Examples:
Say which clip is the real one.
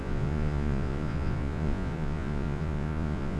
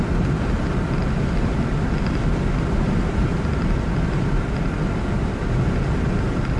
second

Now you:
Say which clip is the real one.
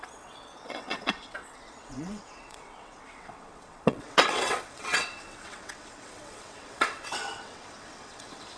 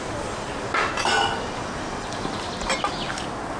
second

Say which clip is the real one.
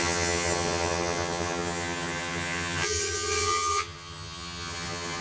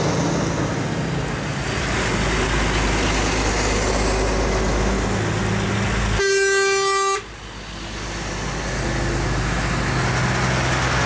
second